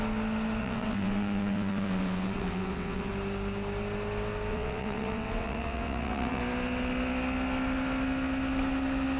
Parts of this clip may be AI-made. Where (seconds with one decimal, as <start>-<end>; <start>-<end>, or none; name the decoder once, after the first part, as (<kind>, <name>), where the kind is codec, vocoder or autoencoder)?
0.6-3.1 (vocoder, WaveNeXt); 4.5-6.4